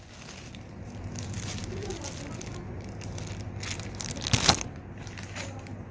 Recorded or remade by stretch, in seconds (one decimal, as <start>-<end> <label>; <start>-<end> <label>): 0.0-5.9 recorded